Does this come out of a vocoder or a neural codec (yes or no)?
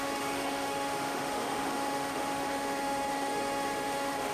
yes